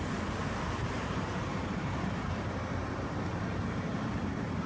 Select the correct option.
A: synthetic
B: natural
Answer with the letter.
A